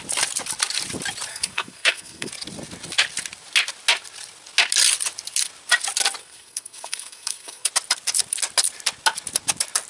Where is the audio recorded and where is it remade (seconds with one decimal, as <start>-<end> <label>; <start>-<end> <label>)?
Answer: 0.0-1.3 recorded; 1.3-2.3 remade; 2.3-6.2 recorded; 6.2-7.7 remade; 7.7-9.9 recorded